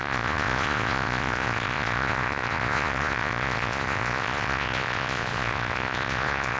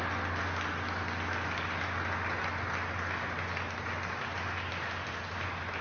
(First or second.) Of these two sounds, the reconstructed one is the first